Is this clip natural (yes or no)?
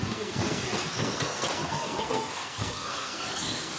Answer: no